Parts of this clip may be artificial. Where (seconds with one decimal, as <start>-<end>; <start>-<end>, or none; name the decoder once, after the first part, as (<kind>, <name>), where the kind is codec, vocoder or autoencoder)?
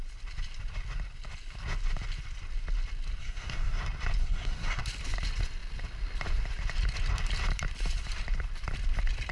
3.2-3.8 (codec, SNAC); 4.2-4.8